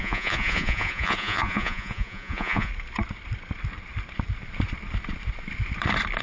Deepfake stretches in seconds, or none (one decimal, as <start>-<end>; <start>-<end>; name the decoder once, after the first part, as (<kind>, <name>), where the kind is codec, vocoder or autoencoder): 0.0-2.7 (vocoder, Vocos)